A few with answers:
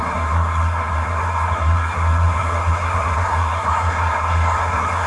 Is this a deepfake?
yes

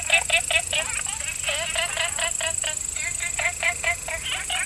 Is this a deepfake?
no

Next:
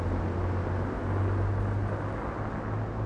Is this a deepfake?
no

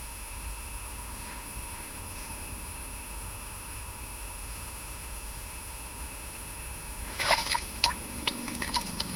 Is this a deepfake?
yes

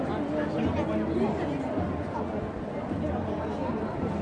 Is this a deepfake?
no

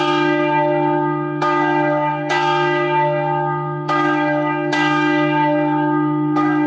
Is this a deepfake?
yes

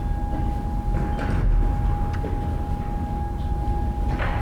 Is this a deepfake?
no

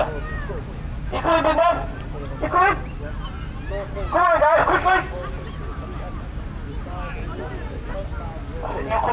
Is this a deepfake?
no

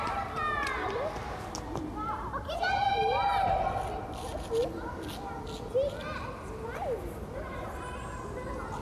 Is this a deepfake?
no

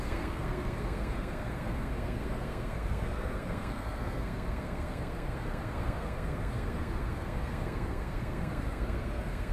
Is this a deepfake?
yes